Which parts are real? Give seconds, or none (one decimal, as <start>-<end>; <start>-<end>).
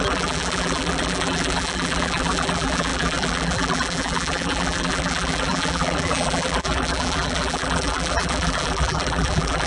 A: none